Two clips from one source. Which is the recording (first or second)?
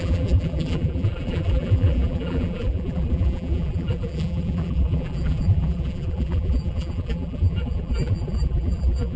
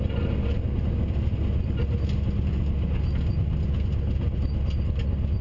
second